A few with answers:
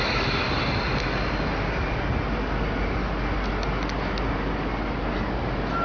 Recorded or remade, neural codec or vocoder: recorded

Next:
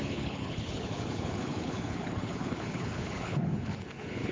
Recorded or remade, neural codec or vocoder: remade, codec, HILCodec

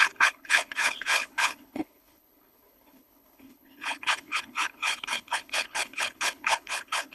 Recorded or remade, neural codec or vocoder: remade, codec, HILCodec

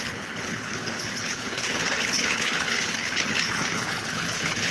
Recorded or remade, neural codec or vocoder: remade, codec, HILCodec